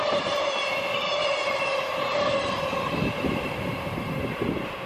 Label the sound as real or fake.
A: real